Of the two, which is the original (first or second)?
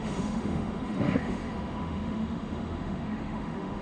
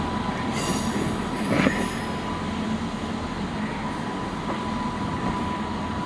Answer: second